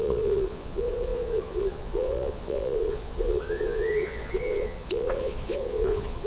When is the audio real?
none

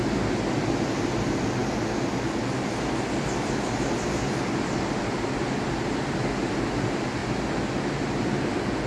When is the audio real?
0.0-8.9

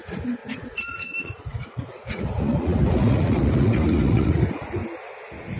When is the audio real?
4.8-5.6

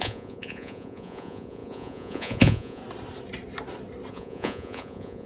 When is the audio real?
2.8-4.1

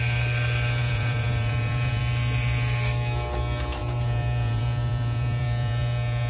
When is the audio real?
0.0-0.8; 2.0-3.8